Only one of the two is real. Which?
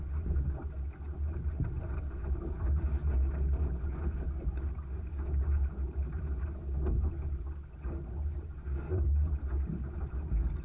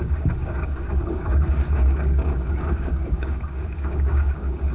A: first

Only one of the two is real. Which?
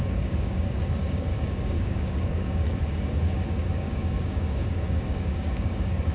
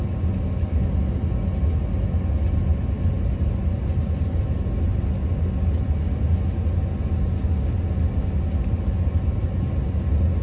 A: second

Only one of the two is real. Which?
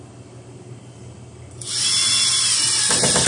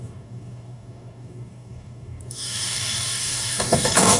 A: first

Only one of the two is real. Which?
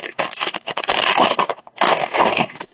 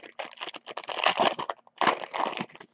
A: second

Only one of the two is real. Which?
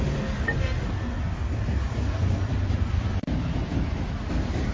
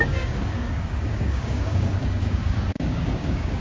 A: first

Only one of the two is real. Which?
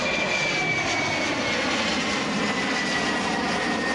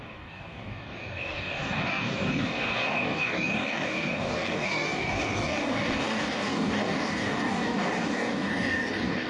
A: first